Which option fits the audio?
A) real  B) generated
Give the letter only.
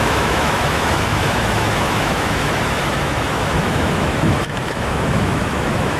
B